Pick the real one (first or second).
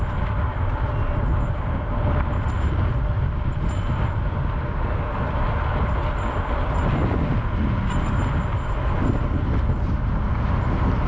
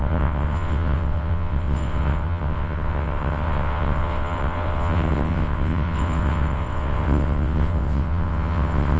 first